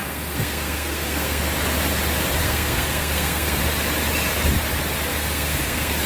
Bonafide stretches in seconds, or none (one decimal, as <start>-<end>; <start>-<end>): 1.4-2.4; 3.6-5.1

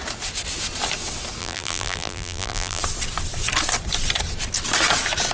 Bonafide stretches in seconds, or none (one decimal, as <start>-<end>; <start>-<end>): 0.0-1.4; 2.8-5.3

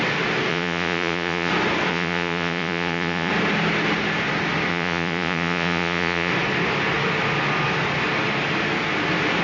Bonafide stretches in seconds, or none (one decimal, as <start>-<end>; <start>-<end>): 0.0-0.5; 1.5-1.9; 3.3-4.7; 6.3-9.4

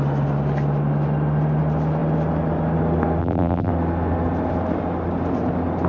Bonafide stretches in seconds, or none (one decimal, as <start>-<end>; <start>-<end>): 0.0-3.2; 3.7-5.9

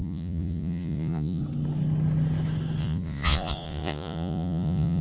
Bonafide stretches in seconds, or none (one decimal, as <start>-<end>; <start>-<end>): 1.4-2.8